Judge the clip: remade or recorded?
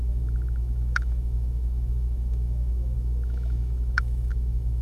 remade